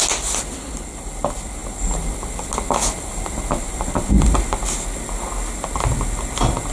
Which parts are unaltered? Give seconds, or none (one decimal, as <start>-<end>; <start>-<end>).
0.0-6.7